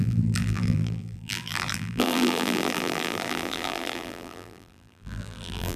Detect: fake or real fake